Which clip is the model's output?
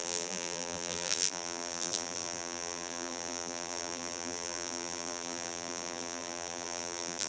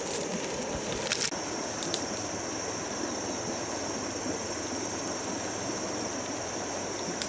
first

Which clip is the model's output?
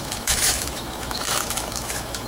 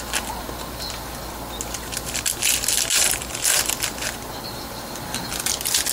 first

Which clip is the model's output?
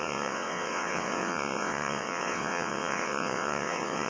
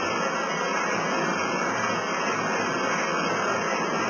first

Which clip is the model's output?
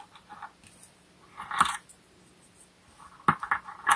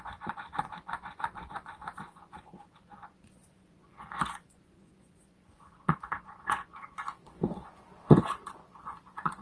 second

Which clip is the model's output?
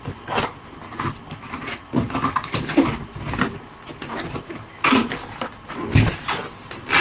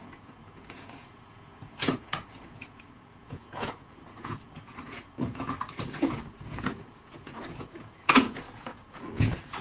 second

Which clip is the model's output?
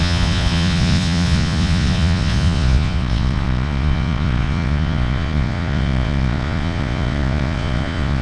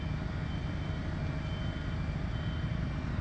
first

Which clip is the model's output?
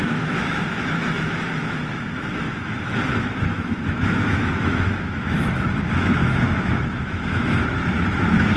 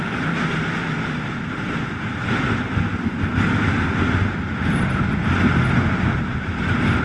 first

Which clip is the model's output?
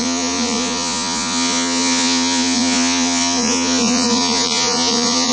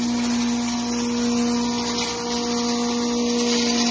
first